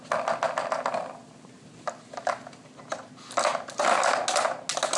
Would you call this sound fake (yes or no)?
no